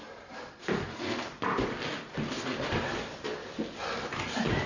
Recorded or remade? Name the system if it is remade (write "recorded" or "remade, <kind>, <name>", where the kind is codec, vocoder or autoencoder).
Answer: recorded